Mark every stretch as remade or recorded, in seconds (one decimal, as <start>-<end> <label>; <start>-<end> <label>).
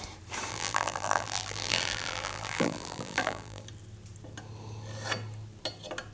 0.0-0.5 recorded; 0.5-3.6 remade; 3.6-6.1 recorded